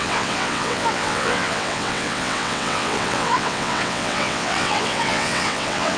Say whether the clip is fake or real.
fake